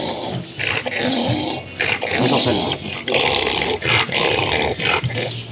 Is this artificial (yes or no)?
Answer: no